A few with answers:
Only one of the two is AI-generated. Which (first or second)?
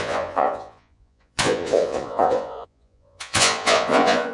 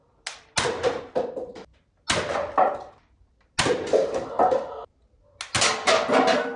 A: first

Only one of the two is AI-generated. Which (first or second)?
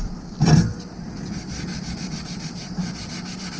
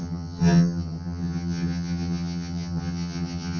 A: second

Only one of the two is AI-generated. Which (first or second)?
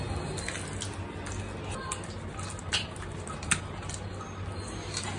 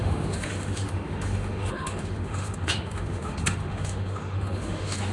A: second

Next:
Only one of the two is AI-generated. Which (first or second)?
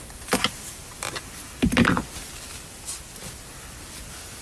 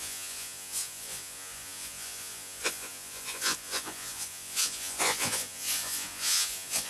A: second